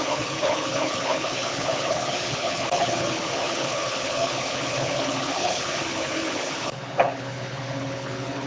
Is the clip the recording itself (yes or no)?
no